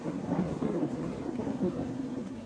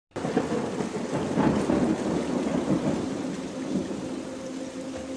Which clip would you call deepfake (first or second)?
first